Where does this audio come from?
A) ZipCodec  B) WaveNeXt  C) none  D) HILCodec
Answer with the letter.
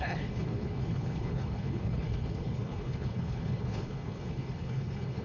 D